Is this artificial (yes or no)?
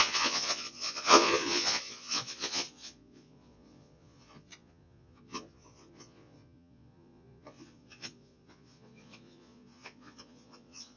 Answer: yes